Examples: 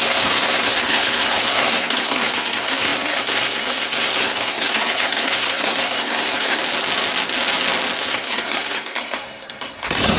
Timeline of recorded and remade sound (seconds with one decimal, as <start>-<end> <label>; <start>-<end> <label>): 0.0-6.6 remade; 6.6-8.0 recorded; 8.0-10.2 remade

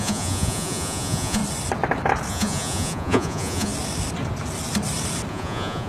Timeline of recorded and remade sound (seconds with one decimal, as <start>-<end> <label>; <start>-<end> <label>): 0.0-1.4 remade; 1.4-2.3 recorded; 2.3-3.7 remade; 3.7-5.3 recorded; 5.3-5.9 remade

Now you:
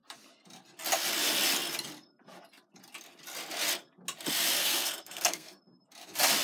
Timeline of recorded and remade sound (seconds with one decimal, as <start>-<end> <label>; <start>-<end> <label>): 0.0-4.6 recorded; 4.6-5.6 remade; 5.6-6.4 recorded

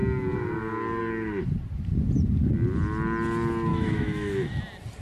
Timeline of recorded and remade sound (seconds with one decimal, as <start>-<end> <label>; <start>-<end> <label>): 0.0-3.7 recorded; 3.7-4.6 remade; 4.6-5.0 recorded

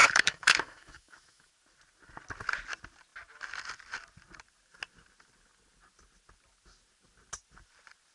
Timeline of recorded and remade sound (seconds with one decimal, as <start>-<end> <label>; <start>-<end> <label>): 0.0-1.5 remade; 1.5-8.1 recorded

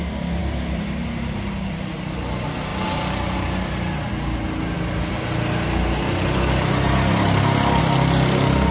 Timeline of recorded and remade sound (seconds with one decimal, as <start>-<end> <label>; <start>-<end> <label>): 0.0-8.7 recorded

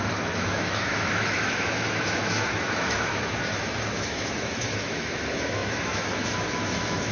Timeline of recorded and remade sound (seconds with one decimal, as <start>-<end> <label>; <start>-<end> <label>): 0.0-7.1 remade